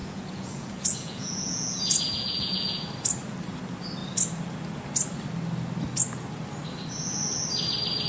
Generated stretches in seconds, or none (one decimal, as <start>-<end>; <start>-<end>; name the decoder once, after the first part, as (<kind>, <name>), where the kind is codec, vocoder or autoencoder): 0.0-2.8 (vocoder, Vocos)